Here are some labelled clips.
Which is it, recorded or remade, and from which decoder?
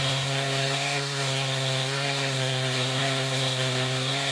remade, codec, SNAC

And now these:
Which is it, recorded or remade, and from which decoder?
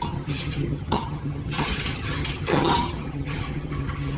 remade, vocoder, HiFi-GAN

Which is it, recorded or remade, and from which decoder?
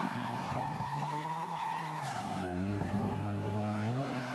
remade, codec, SNAC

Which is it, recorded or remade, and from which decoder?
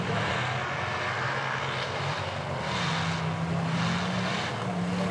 recorded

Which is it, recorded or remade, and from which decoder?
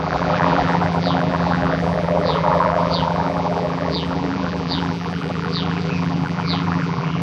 remade, vocoder, BigVGAN v2